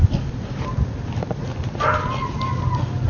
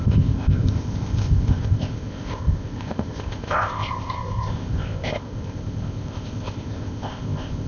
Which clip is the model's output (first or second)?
second